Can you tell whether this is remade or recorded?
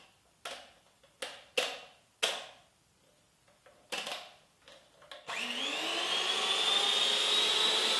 recorded